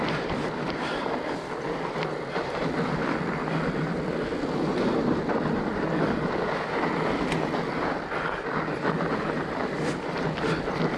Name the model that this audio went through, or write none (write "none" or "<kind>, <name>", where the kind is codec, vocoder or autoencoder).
none